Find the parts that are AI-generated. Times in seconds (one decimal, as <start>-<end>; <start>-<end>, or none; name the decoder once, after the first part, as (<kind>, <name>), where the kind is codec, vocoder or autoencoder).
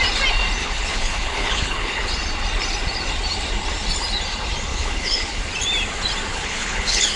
0.6-2.1 (codec, HILCodec); 4.7-5.4; 6.3-7.2